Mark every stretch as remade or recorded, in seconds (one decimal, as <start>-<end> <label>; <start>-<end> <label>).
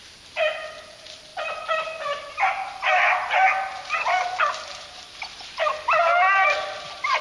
0.0-7.2 recorded